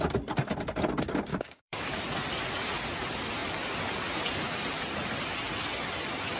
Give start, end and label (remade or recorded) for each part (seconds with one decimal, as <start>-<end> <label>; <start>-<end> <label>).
0.0-1.3 recorded; 1.3-2.0 remade; 2.0-6.4 recorded